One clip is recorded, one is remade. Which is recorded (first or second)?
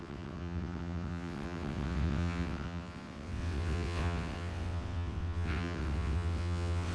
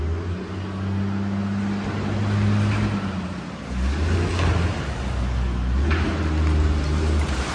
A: second